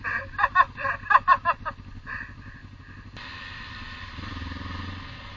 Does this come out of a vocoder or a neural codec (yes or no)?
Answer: no